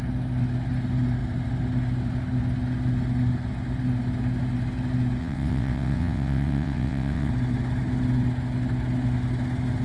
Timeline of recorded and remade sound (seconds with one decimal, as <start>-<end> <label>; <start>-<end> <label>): 0.0-5.2 recorded; 5.2-7.3 remade; 7.3-9.8 recorded